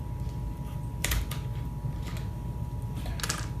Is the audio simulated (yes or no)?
no